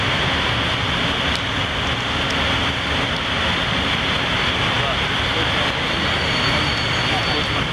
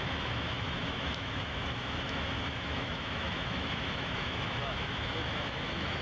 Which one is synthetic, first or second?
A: second